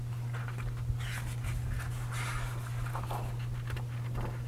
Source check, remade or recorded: recorded